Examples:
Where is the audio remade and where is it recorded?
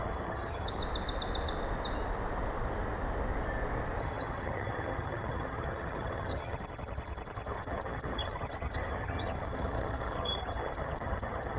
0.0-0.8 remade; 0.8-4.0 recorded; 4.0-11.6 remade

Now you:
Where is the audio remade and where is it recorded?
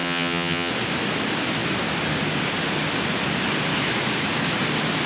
0.0-0.7 remade; 0.7-5.1 recorded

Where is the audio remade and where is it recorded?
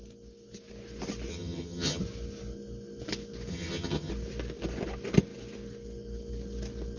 0.0-1.3 recorded; 1.3-2.0 remade; 2.0-3.5 recorded; 3.5-4.1 remade; 4.1-7.0 recorded